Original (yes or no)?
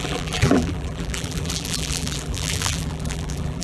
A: no